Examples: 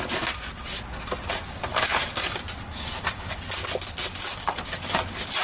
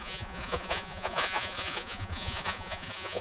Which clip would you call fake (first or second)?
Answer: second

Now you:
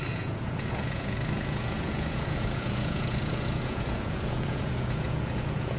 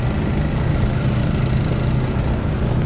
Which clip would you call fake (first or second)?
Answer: first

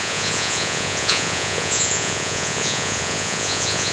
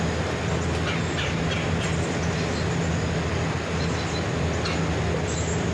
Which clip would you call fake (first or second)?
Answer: first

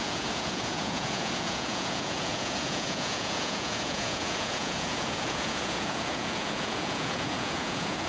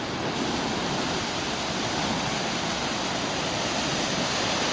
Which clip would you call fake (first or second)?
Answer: first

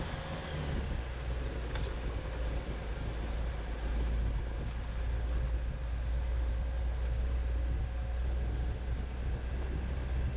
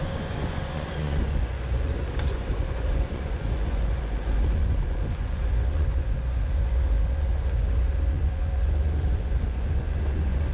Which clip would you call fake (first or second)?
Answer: second